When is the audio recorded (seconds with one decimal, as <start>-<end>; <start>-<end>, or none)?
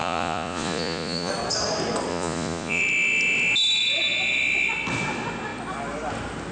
1.3-2.1; 2.8-6.5